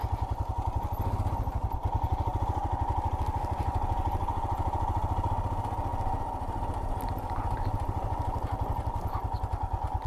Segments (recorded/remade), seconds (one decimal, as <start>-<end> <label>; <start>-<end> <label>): 0.0-10.1 recorded